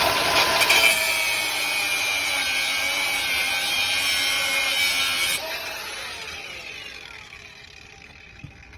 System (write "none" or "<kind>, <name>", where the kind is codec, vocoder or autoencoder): none